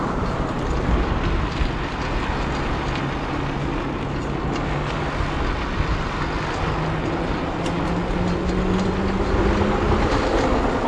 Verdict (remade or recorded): recorded